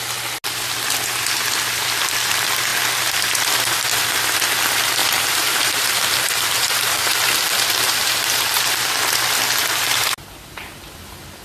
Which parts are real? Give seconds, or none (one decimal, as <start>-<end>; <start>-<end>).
0.0-5.0; 8.7-9.6; 10.2-11.4